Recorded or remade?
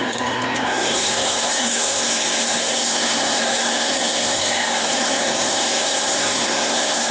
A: remade